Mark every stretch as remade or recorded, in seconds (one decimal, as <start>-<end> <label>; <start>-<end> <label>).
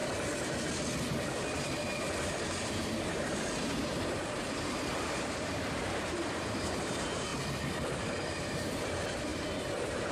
0.0-2.4 recorded; 2.4-7.3 remade; 7.3-7.9 recorded; 7.9-10.1 remade